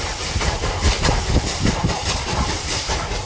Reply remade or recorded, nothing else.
recorded